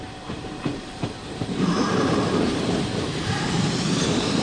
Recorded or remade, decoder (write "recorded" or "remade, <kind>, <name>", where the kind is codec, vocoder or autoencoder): remade, vocoder, BigVGAN v2